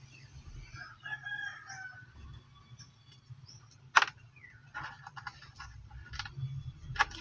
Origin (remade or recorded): recorded